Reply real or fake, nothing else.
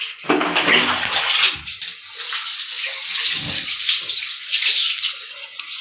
real